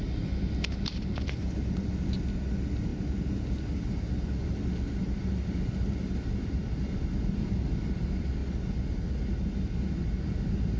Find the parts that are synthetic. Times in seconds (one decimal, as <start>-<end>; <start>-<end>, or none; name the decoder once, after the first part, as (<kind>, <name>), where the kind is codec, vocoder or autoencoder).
none